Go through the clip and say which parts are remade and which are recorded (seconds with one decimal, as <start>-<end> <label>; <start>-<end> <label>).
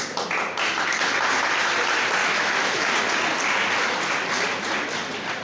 0.0-2.2 recorded; 2.2-2.9 remade; 2.9-5.4 recorded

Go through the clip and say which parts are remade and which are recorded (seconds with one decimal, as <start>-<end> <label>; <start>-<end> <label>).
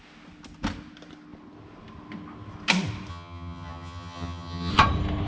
0.0-3.1 recorded; 3.1-4.7 remade; 4.7-5.3 recorded